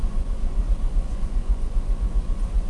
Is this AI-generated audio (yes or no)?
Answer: yes